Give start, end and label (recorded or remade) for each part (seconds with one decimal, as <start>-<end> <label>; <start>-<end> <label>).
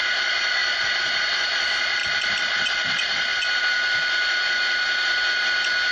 0.0-0.6 recorded; 0.6-1.2 remade; 1.2-2.0 recorded; 2.0-3.6 remade; 3.6-5.9 recorded